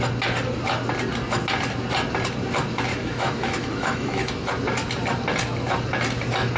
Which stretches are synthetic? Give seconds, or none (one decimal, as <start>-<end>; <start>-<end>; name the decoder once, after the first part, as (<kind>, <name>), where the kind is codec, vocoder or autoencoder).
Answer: 2.9-4.5 (autoencoder, DAC-VAE)